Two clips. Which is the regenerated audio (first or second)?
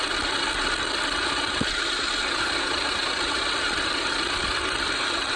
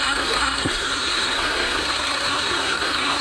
second